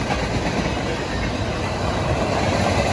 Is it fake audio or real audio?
real